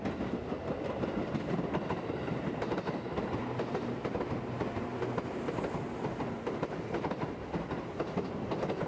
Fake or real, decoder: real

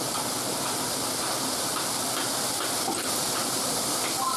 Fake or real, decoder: fake, vocoder, BigVGAN v2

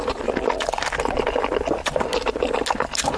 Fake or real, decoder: real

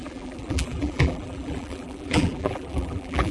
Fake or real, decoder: fake, vocoder, BigVGAN v2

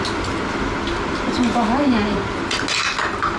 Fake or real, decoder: real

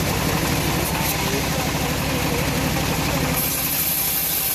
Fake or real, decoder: real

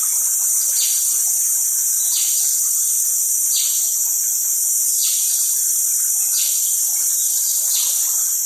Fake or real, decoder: real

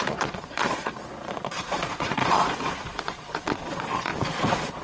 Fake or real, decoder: fake, vocoder, Vocos